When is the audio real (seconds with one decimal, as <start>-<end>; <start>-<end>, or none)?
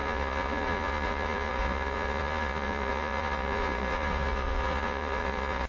none